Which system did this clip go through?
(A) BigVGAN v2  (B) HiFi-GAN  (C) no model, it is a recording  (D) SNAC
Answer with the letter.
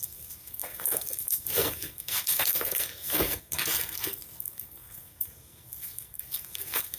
D